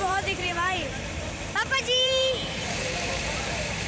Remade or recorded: remade